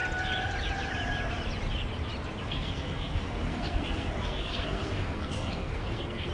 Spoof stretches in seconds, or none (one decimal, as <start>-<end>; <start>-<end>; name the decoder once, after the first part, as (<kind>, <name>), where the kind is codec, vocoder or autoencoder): 2.4-6.3 (codec, SNAC)